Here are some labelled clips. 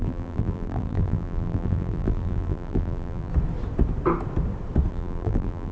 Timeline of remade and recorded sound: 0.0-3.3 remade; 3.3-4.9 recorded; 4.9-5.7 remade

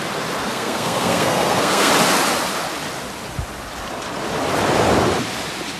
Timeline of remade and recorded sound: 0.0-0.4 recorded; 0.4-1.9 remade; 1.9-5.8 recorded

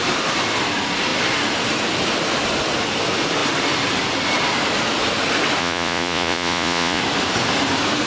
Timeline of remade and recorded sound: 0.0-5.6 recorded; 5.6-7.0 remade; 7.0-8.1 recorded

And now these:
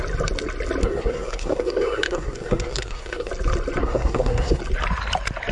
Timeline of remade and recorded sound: 0.0-0.8 recorded; 0.8-3.3 remade; 3.3-3.8 recorded; 3.8-4.6 remade; 4.6-5.5 recorded

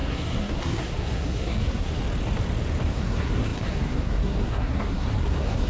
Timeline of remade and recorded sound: 0.0-2.0 remade; 2.0-2.9 recorded; 2.9-5.7 remade

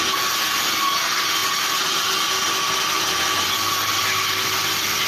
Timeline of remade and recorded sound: 0.0-5.1 recorded

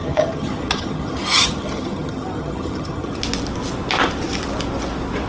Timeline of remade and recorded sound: 0.0-3.2 remade; 3.2-5.3 recorded